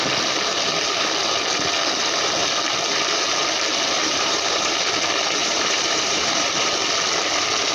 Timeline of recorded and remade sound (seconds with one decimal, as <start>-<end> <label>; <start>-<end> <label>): 0.0-4.0 recorded; 4.0-4.8 remade; 4.8-5.4 recorded; 5.4-6.7 remade; 6.7-7.7 recorded